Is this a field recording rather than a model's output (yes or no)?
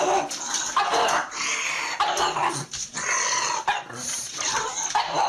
yes